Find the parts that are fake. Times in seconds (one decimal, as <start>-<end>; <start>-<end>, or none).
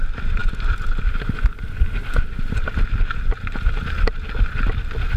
none